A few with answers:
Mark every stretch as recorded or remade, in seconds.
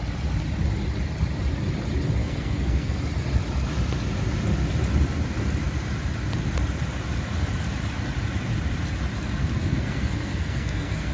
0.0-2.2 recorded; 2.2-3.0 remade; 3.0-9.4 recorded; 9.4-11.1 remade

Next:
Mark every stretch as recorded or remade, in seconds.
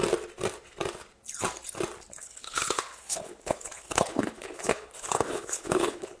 0.0-2.2 recorded; 2.2-6.2 remade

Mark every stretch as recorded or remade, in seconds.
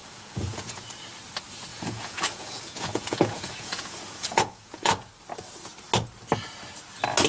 0.0-0.8 remade; 0.8-1.7 recorded; 1.7-5.1 remade; 5.1-7.3 recorded